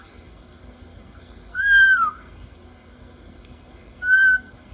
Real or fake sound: fake